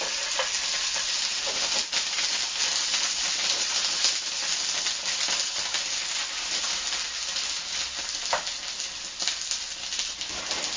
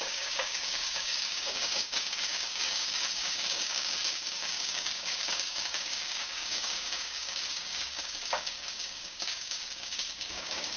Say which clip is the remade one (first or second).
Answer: second